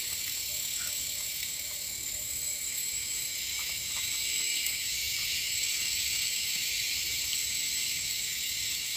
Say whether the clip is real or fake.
fake